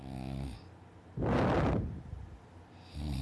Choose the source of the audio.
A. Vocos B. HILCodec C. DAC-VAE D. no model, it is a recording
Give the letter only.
D